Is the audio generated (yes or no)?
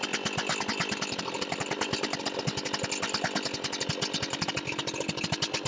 no